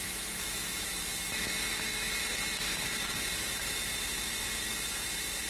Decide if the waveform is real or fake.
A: fake